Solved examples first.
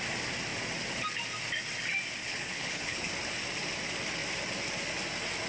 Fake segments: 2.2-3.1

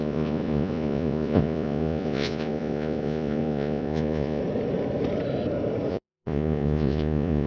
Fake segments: 0.0-4.4; 5.9-7.5

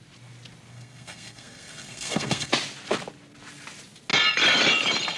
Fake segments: 0.7-2.5

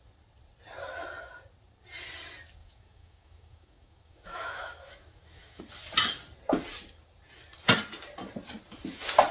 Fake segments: 2.6-5.6

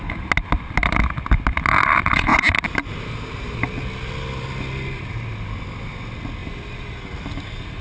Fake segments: 2.3-3.0

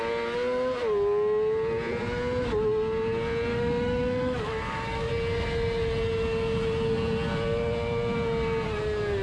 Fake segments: 3.5-5.1

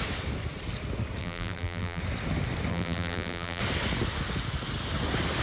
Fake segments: 1.2-2.0; 2.7-3.6